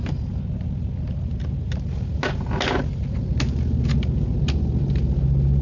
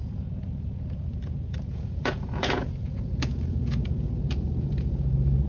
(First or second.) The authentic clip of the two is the first